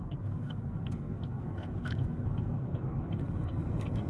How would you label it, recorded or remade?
remade